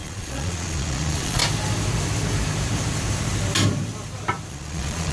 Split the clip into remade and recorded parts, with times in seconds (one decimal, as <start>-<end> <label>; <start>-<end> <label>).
0.0-1.4 remade; 1.4-4.5 recorded; 4.5-5.1 remade